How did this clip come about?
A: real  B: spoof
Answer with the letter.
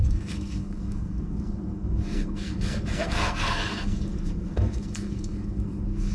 B